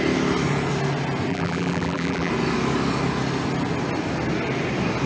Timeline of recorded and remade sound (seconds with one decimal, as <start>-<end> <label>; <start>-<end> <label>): 0.0-1.3 recorded; 1.3-2.3 remade; 2.3-5.1 recorded